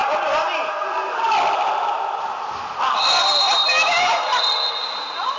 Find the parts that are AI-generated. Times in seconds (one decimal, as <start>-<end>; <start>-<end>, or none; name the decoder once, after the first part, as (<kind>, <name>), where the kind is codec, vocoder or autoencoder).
none